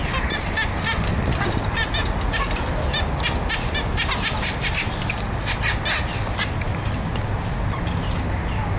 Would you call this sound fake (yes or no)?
no